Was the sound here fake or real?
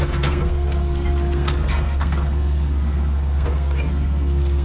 fake